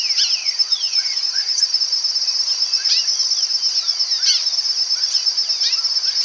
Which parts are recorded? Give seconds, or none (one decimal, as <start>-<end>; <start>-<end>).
0.0-0.4; 1.8-6.2

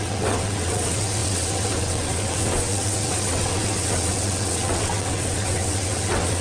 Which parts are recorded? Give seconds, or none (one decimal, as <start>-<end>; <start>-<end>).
none